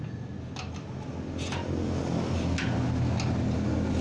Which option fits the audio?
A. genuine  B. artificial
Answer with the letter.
A